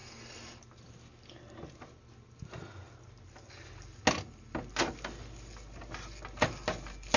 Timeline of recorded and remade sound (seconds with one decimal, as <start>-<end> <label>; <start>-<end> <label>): 0.0-7.2 recorded